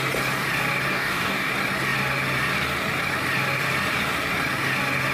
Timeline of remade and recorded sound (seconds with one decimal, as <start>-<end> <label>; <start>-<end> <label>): 0.0-0.9 recorded; 0.9-1.5 remade; 1.5-5.1 recorded